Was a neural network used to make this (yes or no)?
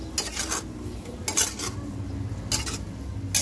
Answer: no